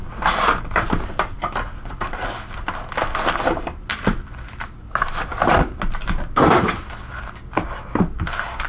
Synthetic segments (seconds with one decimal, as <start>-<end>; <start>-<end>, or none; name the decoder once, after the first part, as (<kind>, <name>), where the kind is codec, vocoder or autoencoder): none